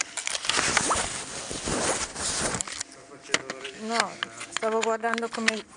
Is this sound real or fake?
real